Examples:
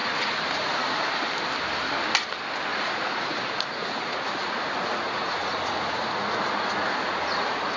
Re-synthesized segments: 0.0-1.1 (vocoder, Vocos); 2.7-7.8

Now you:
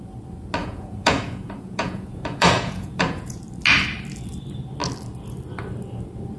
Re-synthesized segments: 0.6-3.4 (vocoder, Vocos)

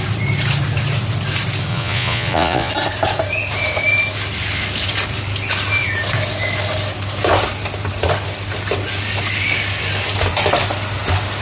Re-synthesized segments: 1.7-2.7 (vocoder, Vocos)